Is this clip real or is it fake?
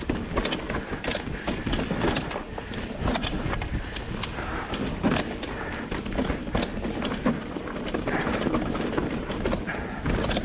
real